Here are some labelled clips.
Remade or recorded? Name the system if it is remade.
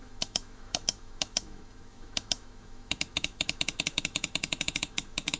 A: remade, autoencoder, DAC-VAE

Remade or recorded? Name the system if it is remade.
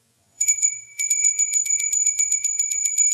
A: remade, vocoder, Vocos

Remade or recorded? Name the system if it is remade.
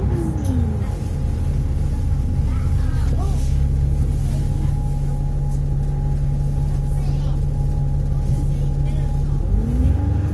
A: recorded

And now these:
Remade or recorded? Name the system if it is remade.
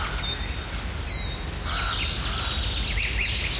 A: recorded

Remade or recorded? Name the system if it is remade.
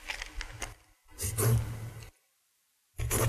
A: recorded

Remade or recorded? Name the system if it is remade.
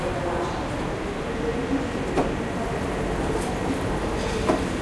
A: recorded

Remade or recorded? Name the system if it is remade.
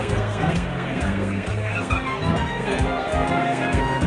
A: remade, codec, SNAC